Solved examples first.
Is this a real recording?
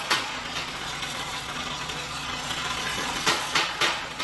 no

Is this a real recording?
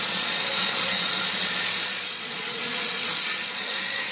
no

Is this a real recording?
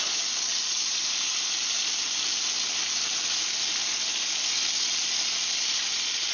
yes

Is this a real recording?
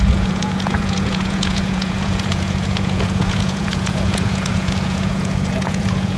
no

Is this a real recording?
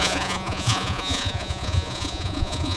no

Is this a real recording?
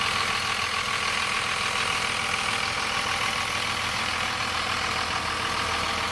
yes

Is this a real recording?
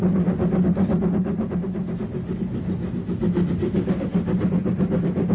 yes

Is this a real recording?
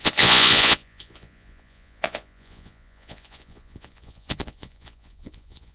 no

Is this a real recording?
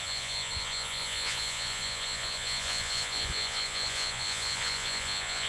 no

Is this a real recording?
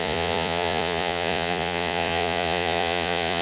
no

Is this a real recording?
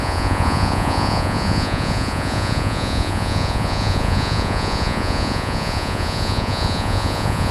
no